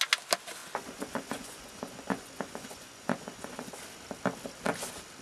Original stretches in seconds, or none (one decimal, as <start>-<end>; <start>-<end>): 0.0-0.6; 3.7-5.2